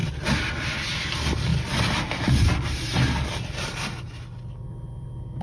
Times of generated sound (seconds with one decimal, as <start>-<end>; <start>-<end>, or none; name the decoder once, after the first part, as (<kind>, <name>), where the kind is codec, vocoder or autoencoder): none